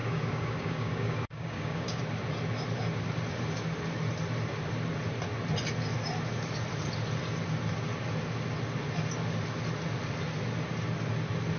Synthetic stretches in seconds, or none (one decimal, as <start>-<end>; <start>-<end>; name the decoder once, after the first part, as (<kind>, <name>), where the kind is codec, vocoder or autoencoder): 0.0-2.0 (codec, DAC)